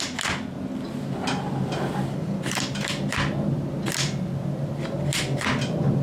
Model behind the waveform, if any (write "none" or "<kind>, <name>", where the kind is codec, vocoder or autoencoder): none